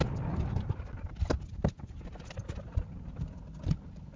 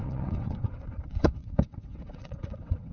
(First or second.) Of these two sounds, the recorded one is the first